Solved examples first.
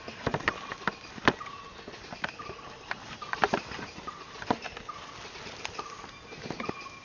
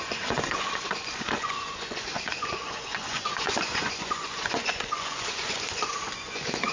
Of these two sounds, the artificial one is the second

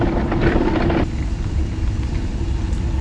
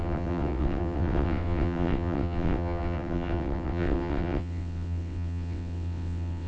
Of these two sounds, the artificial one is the second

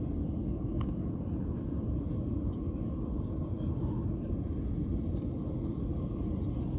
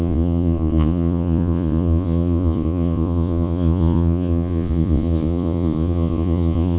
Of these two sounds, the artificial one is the second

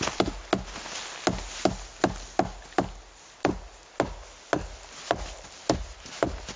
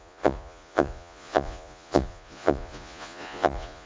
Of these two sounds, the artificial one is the second